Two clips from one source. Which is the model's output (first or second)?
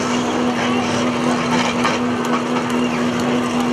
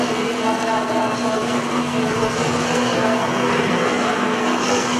second